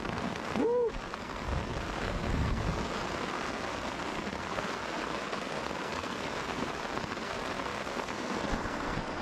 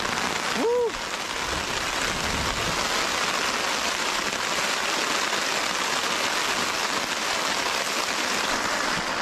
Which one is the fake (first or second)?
first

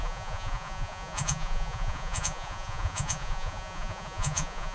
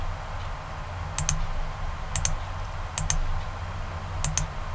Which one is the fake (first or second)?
first